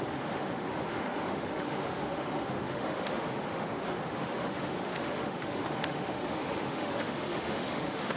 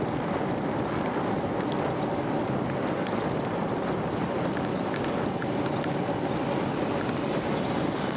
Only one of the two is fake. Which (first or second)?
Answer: first